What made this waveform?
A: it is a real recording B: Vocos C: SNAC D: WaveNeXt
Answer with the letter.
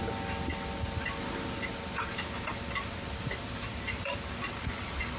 A